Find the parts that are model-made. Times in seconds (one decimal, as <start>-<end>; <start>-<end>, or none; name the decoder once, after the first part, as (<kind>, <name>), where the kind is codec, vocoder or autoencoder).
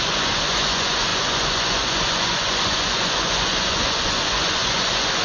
0.0-5.2 (vocoder, Vocos)